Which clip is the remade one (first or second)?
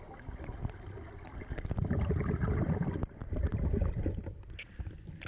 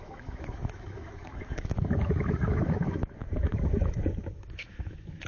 second